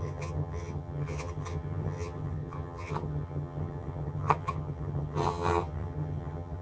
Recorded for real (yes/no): no